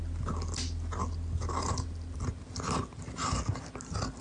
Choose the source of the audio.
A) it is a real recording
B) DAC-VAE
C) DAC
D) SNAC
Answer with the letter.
A